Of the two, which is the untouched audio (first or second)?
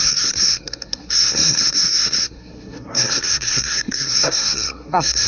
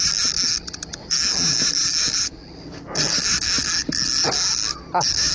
second